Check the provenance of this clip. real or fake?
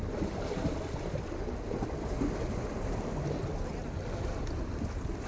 real